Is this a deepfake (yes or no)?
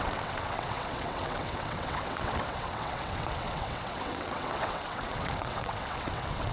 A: yes